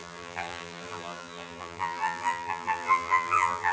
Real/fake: fake